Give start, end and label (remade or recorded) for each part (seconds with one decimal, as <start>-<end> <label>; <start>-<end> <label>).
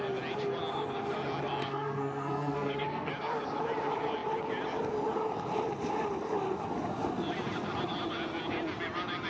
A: 0.0-1.6 recorded; 1.6-3.1 remade; 3.1-9.3 recorded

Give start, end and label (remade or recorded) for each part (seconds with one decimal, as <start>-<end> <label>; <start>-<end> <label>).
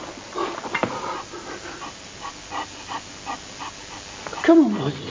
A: 0.0-5.1 recorded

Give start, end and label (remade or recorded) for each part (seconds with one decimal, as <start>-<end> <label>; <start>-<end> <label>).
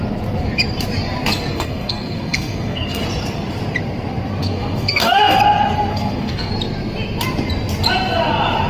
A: 0.0-1.5 recorded; 1.5-3.0 remade; 3.0-4.4 recorded; 4.4-5.4 remade; 5.4-5.9 recorded; 5.9-6.5 remade; 6.5-8.7 recorded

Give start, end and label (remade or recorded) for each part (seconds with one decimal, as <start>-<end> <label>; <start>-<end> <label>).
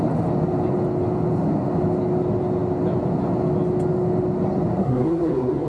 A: 0.0-4.8 recorded; 4.8-5.7 remade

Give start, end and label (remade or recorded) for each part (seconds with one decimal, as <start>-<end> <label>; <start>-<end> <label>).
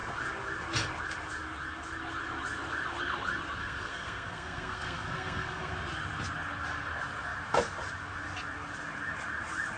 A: 0.0-3.6 recorded; 3.6-5.7 remade; 5.7-9.8 recorded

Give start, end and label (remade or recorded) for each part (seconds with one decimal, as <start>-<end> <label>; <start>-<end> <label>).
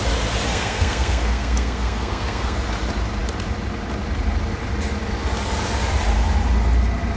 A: 0.0-0.5 recorded; 0.5-2.6 remade; 2.6-7.2 recorded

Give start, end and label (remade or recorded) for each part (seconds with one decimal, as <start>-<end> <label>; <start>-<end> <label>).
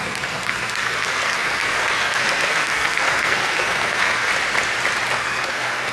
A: 0.0-4.3 remade; 4.3-5.1 recorded; 5.1-5.9 remade